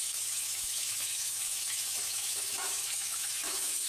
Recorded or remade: remade